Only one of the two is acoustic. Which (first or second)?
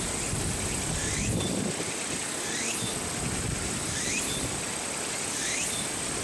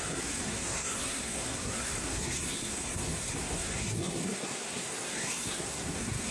first